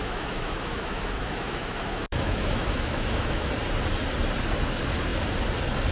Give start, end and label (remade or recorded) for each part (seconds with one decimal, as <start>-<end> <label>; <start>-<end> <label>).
0.0-3.5 remade; 3.5-5.9 recorded